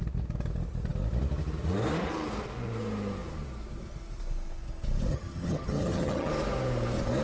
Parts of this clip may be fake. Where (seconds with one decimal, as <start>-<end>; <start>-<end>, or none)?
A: 5.1-6.3